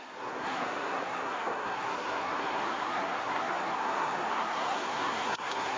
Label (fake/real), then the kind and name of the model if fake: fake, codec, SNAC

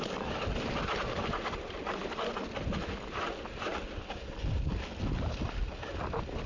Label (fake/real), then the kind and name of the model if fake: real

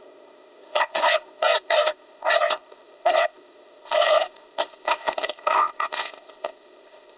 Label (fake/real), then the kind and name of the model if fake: fake, codec, ZipCodec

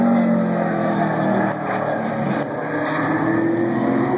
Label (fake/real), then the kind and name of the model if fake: real